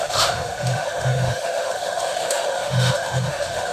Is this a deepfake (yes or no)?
yes